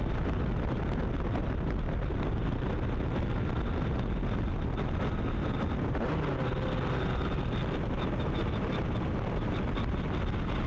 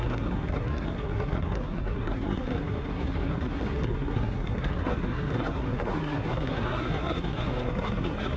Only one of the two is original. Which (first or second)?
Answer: first